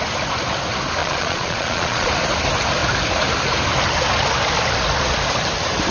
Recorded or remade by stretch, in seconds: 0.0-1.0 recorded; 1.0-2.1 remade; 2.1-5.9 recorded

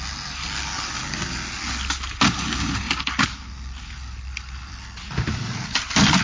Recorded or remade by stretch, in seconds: 0.0-6.2 recorded

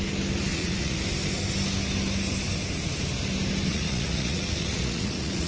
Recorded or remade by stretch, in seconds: 0.0-0.5 recorded; 0.5-1.0 remade; 1.0-3.7 recorded; 3.7-5.5 remade